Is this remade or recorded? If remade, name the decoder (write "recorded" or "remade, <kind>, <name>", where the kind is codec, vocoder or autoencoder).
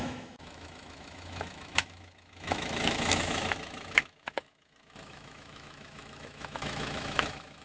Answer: remade, autoencoder, DAC-VAE